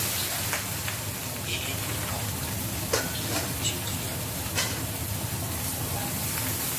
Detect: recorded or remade recorded